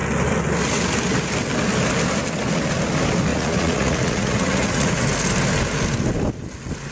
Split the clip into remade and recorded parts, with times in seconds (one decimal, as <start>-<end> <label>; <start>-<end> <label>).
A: 0.0-3.3 recorded; 3.3-4.9 remade; 4.9-6.9 recorded